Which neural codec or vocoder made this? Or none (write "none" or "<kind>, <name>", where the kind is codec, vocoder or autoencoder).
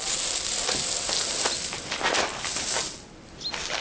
none